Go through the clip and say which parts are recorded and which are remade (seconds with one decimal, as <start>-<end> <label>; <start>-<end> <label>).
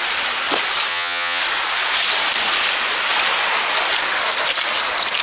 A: 0.0-0.9 recorded; 0.9-1.4 remade; 1.4-5.2 recorded